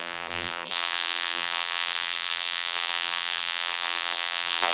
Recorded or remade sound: remade